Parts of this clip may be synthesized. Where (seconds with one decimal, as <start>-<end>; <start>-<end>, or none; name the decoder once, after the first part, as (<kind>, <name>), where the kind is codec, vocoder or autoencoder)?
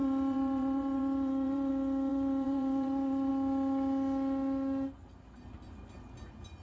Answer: 0.0-1.7 (vocoder, BigVGAN v2); 2.1-3.3